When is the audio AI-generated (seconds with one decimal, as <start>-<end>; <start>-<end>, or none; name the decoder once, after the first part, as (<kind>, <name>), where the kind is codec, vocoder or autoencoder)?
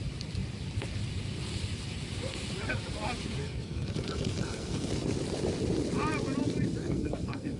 3.4-4.9 (codec, SNAC); 6.8-7.6